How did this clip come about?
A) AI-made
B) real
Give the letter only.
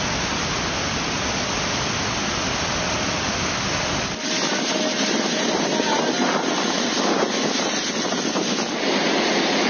B